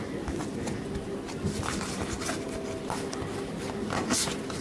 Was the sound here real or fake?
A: real